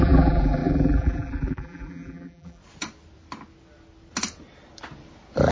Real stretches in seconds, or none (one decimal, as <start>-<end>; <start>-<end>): 2.6-5.5